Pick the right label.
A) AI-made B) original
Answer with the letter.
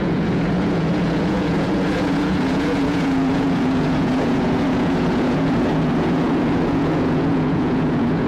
A